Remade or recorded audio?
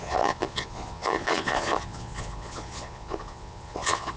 remade